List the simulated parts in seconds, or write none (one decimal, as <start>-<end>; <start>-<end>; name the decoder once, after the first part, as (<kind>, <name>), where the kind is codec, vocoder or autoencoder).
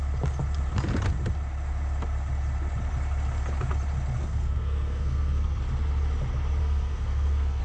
4.2-5.6 (codec, SNAC); 6.6-7.6